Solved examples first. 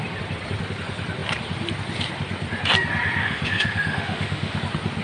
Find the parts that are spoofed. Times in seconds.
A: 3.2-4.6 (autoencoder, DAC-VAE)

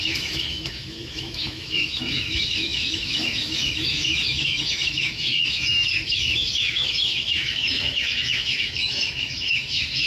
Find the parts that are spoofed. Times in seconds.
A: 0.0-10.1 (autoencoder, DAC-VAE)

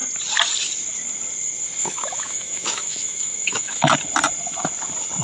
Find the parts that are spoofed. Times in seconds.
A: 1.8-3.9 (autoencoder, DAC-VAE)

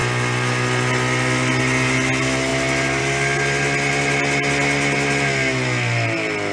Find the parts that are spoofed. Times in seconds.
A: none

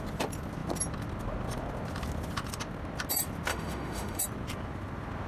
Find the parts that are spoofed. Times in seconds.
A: 3.5-4.2 (autoencoder, DAC-VAE)